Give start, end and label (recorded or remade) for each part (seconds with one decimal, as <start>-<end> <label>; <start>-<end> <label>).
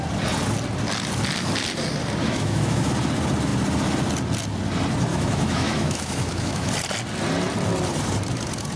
0.0-2.2 recorded; 2.2-2.9 remade; 2.9-5.1 recorded; 5.1-6.7 remade; 6.7-8.8 recorded